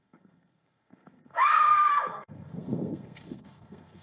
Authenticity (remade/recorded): remade